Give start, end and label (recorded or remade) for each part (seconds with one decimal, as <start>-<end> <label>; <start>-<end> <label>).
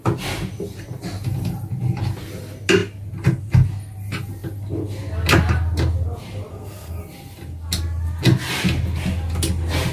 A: 0.0-6.5 recorded; 6.5-7.0 remade; 7.0-9.9 recorded